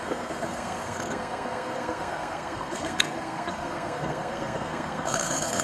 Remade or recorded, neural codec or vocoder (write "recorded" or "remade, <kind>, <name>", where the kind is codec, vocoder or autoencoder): remade, codec, SNAC